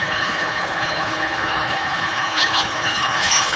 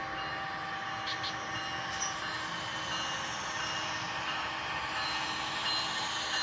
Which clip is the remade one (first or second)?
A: first